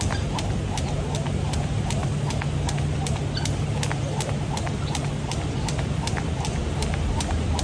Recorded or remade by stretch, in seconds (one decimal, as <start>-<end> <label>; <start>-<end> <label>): 0.0-7.6 recorded